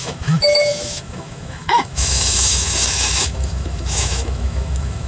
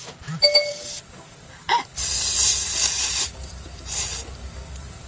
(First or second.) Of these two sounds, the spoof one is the first